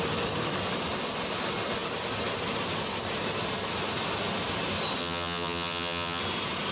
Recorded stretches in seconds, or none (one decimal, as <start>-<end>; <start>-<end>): 0.0-5.0; 6.2-6.7